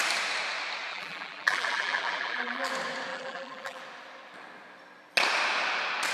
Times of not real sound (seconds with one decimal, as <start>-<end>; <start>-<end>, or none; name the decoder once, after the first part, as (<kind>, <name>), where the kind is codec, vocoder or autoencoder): 0.9-2.7 (vocoder, BigVGAN v2); 3.1-3.8